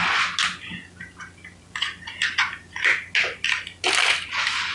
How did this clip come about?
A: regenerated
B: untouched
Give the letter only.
B